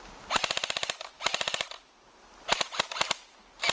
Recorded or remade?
recorded